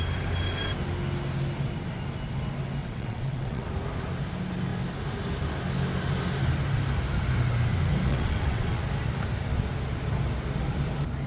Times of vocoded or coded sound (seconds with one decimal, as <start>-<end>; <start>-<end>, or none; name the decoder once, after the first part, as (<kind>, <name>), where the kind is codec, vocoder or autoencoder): 2.8-3.7 (vocoder, WaveNeXt); 8.1-8.8